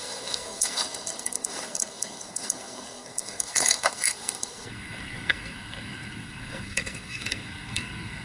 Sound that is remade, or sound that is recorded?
remade